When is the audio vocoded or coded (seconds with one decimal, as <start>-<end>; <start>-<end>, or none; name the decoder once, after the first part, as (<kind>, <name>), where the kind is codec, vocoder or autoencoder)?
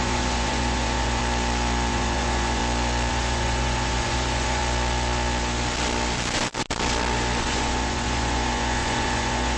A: 0.0-1.2 (vocoder, Vocos); 1.9-2.6; 3.1-4.6; 7.4-9.6